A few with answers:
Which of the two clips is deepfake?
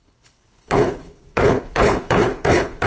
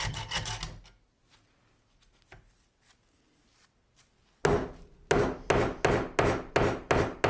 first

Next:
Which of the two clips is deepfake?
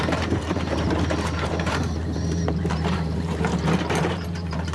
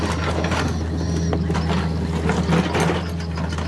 first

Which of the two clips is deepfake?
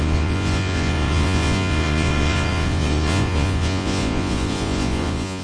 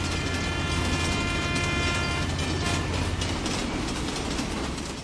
first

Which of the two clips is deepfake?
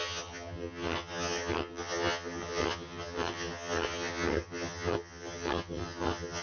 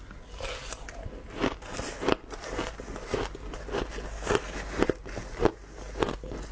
first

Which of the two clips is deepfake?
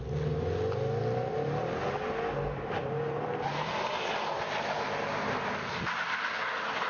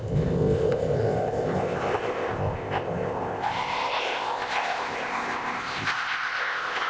second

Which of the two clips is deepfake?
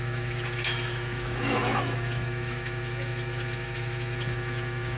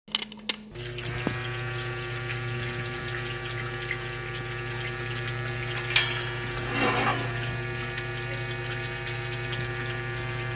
first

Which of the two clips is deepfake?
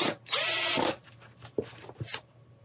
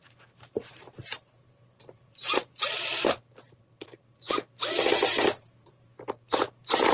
second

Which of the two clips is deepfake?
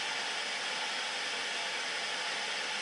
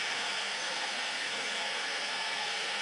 second